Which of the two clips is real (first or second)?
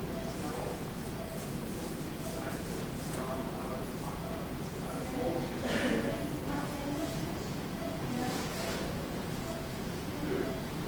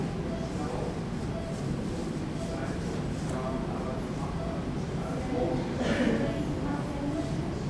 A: second